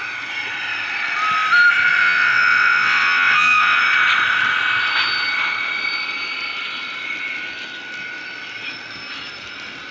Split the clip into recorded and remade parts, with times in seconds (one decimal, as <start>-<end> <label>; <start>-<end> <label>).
0.0-2.0 recorded; 2.0-3.8 remade; 3.8-9.9 recorded